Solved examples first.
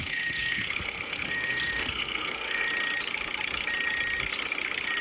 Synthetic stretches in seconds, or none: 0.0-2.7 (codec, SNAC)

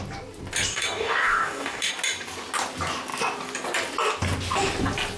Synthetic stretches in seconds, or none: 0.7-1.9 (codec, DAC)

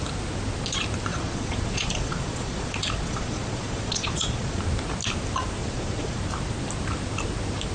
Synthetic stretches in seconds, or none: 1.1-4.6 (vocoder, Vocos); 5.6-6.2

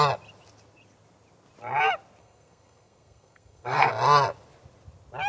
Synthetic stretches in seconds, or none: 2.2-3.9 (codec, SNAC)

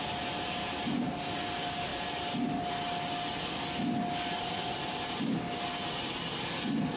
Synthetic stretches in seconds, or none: none

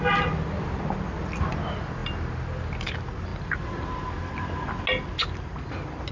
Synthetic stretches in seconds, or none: none

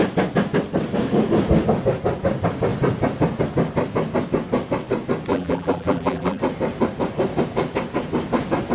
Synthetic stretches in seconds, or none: 5.3-6.4 (vocoder, BigVGAN v2)

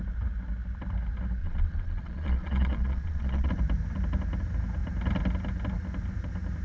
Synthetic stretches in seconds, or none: 1.4-3.5 (vocoder, Vocos)